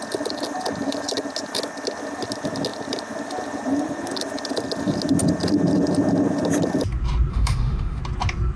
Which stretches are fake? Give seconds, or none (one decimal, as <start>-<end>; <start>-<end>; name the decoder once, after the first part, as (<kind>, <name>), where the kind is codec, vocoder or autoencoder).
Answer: 7.3-8.0 (autoencoder, DAC-VAE)